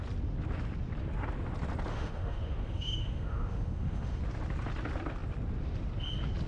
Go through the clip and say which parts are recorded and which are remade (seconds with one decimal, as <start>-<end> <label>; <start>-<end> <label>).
0.0-1.9 recorded; 1.9-4.2 remade; 4.2-6.5 recorded